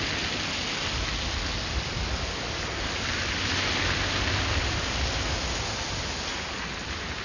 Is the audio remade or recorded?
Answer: recorded